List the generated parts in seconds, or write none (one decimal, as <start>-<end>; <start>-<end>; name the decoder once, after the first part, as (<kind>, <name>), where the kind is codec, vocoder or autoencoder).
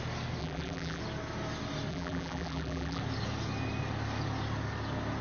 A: 0.4-1.0 (vocoder, BigVGAN v2); 1.9-3.0